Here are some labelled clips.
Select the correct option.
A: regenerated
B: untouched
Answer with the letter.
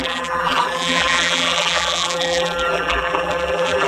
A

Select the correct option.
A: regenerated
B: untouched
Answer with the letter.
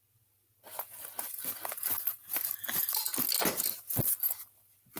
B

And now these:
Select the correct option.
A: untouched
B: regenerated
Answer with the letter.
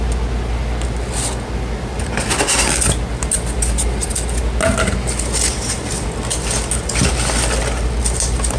A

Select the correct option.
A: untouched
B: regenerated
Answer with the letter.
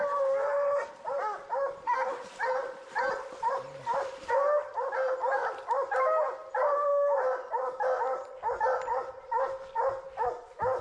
A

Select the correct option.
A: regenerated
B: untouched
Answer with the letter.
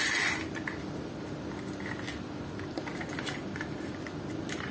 B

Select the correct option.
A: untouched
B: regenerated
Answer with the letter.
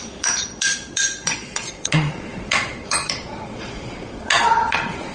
B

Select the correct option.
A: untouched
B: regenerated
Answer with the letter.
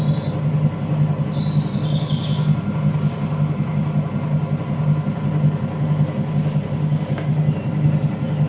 A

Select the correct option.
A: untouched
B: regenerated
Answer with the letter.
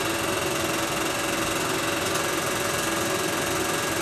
A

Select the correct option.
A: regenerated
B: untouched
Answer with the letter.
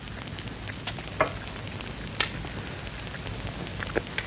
B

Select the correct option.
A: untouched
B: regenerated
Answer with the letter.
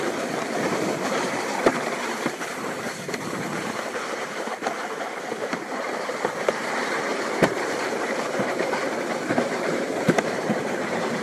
B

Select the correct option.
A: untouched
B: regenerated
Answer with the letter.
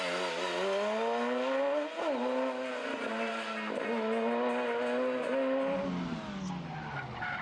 A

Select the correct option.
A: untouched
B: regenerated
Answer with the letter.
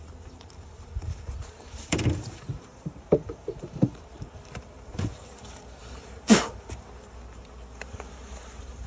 B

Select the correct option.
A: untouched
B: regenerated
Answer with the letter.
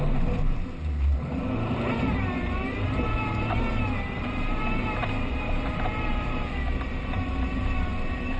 B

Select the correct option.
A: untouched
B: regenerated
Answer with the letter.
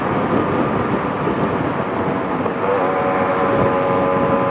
A